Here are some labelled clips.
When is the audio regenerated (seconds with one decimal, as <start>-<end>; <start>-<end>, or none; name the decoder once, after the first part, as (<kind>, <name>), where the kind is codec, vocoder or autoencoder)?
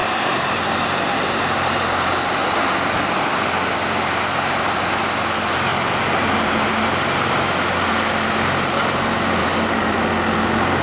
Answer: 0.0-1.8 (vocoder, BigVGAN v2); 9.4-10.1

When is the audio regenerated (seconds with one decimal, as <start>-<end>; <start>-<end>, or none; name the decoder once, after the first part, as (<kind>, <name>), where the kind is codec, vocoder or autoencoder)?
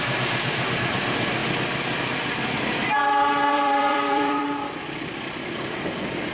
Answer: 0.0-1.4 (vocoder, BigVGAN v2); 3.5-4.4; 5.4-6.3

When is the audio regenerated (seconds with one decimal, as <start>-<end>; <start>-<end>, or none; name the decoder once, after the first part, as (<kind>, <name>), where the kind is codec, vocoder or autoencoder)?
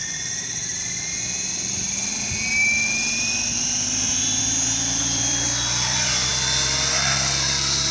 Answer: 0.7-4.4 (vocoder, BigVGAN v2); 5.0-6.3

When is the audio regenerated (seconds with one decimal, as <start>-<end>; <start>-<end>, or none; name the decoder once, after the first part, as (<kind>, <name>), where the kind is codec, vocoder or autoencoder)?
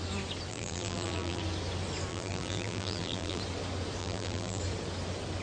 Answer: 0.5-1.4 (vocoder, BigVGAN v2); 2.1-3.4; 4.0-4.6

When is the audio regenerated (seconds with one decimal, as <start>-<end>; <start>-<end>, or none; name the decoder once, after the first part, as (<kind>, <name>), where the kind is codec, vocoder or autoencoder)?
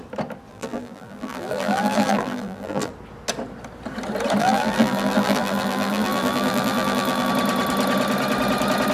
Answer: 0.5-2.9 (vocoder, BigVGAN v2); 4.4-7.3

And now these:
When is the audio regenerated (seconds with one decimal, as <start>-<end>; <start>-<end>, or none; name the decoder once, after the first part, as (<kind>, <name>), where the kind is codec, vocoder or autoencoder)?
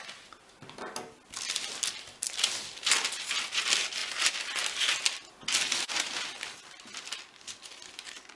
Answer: none